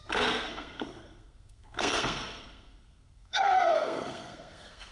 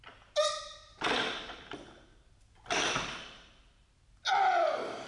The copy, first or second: first